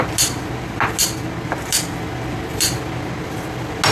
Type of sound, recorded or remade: recorded